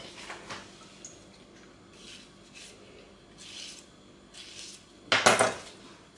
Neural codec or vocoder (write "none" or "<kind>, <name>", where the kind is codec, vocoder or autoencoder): none